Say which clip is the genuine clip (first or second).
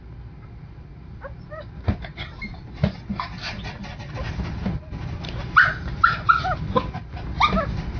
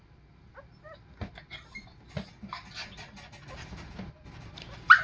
second